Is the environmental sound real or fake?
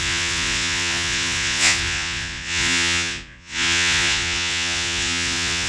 fake